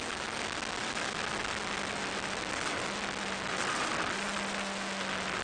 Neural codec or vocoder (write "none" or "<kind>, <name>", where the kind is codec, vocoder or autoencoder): none